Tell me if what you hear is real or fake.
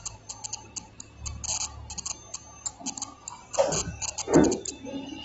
real